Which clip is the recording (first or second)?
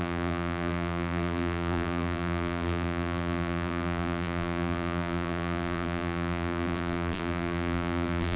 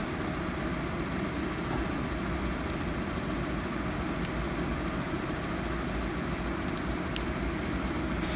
second